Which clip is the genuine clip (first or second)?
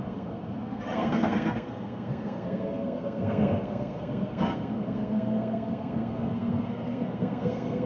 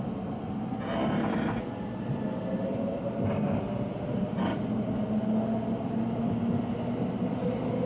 second